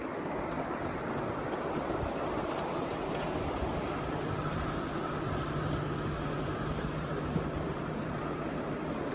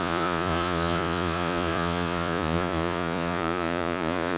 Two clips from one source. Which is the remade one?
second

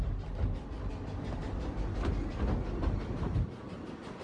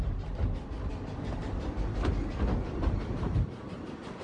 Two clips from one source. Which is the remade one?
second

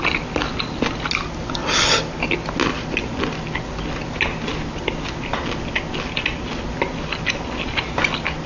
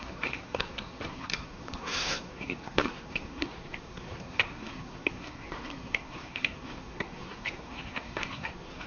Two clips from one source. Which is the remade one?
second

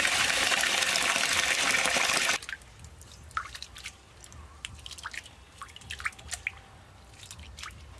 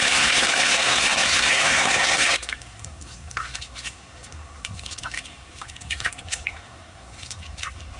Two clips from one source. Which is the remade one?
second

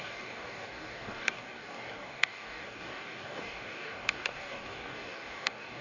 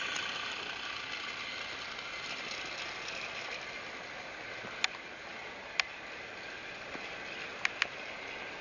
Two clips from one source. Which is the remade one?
first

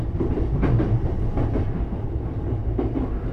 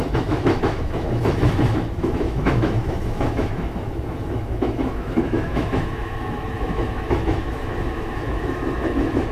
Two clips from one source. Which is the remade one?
second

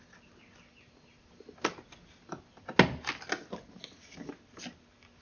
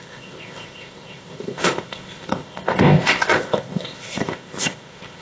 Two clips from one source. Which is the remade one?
second